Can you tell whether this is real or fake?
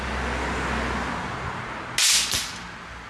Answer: real